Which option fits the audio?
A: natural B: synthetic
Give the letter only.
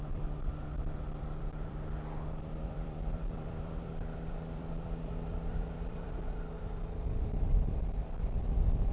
B